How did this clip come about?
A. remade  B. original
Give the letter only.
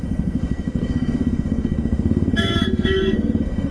A